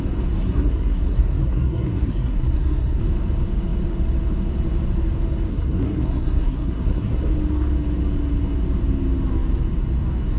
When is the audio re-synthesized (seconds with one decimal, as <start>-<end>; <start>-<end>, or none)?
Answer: 0.4-3.0; 5.5-7.2